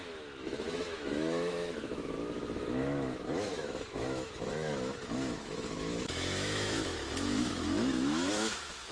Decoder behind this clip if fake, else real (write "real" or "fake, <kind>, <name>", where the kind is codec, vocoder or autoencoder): fake, autoencoder, DAC-VAE